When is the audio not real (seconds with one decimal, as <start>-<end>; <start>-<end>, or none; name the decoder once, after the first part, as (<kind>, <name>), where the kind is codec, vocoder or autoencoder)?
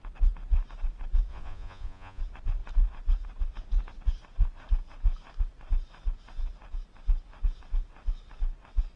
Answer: 1.3-2.2 (vocoder, Vocos)